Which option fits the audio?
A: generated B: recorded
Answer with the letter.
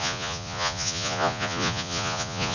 A